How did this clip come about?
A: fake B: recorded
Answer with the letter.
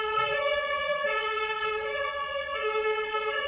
A